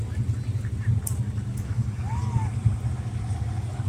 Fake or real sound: real